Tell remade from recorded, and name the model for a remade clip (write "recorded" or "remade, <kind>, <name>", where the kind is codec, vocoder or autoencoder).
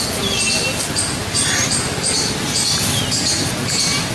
recorded